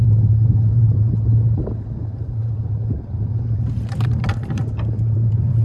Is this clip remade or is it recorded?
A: remade